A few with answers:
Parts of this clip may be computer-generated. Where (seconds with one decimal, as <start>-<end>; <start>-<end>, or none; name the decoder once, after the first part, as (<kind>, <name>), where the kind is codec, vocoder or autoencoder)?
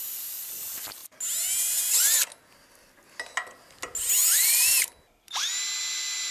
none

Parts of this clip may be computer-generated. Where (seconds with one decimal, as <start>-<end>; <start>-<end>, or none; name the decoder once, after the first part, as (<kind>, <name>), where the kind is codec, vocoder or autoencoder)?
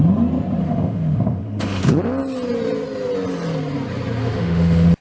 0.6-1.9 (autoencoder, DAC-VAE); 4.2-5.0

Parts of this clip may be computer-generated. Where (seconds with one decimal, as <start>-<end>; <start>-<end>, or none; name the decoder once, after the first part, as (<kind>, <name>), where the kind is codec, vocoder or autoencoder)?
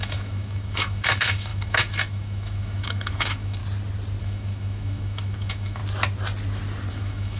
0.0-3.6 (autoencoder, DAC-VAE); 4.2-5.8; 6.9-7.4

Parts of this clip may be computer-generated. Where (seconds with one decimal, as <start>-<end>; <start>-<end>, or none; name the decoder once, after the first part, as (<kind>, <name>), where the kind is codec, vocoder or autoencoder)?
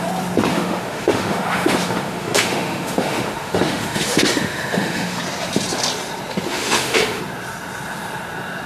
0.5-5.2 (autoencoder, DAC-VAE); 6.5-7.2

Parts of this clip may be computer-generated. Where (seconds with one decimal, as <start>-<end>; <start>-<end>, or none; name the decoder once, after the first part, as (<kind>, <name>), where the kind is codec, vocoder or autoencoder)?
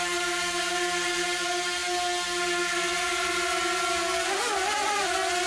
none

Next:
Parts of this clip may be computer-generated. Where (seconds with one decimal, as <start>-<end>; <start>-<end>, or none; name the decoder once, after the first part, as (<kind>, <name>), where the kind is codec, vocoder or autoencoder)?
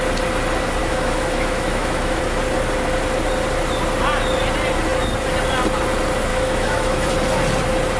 0.8-2.2 (autoencoder, DAC-VAE); 6.3-7.1